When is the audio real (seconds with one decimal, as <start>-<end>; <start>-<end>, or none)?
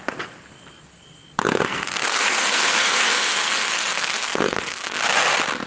0.0-1.4; 4.8-5.7